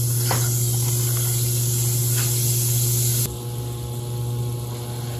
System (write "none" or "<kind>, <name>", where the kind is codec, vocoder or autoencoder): none